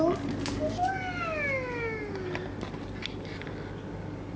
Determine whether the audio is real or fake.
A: real